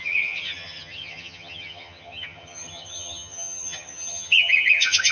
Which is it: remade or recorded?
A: remade